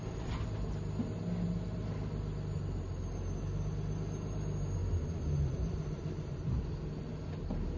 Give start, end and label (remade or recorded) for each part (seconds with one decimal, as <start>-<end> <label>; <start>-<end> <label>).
0.0-4.8 recorded; 4.8-6.6 remade; 6.6-7.8 recorded